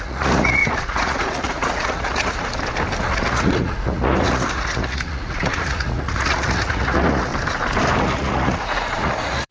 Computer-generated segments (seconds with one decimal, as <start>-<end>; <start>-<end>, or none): 0.0-2.5; 3.0-7.3; 8.0-9.5